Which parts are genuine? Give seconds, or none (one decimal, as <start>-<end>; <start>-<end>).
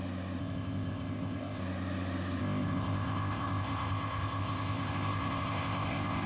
0.0-0.4; 1.6-2.4